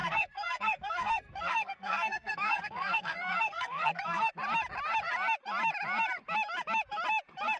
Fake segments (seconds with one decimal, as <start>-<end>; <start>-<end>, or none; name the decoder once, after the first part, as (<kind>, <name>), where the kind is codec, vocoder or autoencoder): 0.0-4.3 (codec, SNAC)